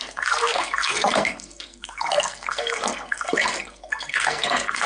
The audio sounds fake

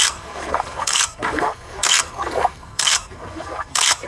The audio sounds fake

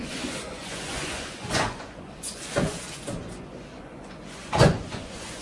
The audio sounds fake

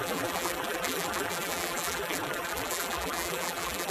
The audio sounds fake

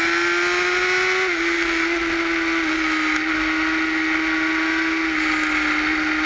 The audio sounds real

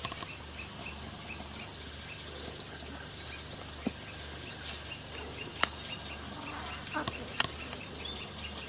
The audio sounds real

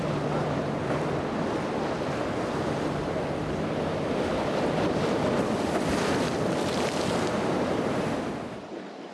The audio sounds fake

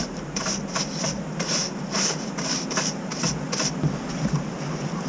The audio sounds real